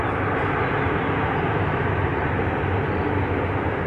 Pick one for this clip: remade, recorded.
recorded